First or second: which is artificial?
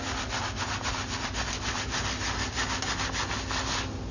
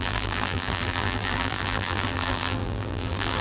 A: second